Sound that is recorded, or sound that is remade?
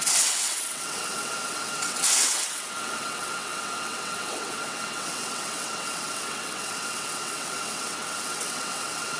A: remade